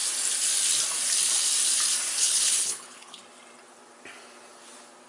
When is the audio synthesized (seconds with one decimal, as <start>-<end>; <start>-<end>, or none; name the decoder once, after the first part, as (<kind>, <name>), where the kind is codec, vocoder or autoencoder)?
2.2-3.2 (codec, HILCodec)